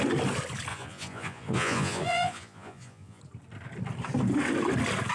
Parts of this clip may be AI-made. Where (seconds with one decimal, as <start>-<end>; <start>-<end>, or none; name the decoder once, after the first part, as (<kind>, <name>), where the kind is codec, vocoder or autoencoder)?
0.7-3.2 (vocoder, Vocos)